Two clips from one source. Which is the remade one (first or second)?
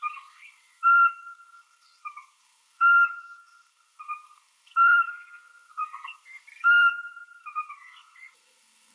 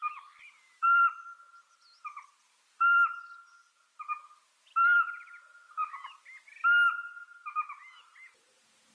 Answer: first